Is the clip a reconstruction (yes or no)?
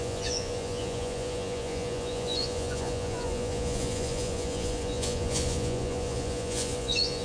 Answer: yes